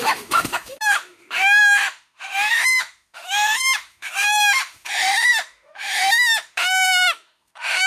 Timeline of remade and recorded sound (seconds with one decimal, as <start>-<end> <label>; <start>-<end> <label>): 0.0-7.9 remade